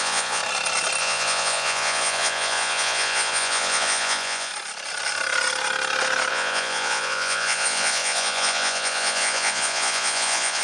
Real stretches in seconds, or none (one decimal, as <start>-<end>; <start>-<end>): 0.4-1.0; 4.5-6.3